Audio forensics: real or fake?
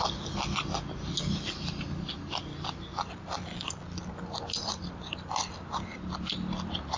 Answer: real